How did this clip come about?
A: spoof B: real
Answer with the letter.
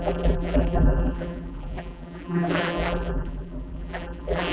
A